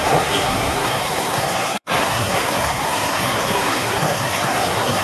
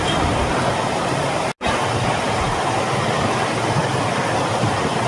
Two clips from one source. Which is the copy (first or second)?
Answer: first